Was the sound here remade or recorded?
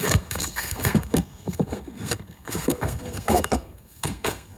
remade